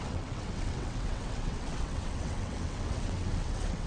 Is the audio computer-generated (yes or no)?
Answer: yes